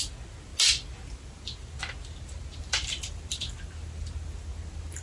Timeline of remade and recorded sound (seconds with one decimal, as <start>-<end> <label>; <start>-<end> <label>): 0.0-5.0 recorded